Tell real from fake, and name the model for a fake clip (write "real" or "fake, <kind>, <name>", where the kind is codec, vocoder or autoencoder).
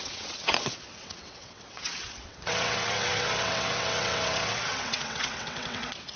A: fake, vocoder, WaveNeXt